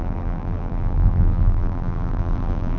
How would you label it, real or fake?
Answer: fake